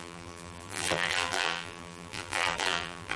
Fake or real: fake